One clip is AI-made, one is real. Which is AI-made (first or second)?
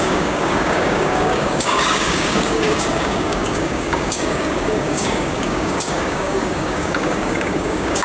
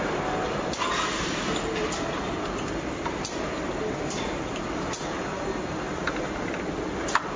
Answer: first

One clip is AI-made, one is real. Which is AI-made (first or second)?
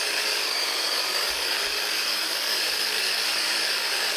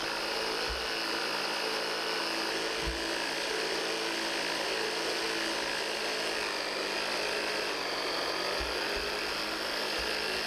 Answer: first